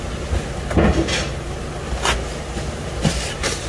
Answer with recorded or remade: recorded